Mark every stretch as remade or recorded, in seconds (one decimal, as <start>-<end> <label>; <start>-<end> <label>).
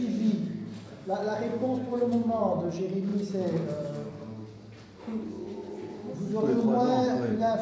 0.0-1.5 recorded; 1.5-2.4 remade; 2.4-7.6 recorded